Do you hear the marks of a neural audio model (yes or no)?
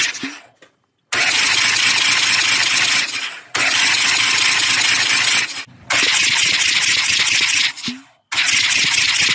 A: no